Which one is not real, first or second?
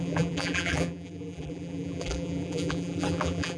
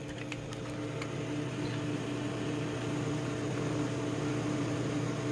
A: first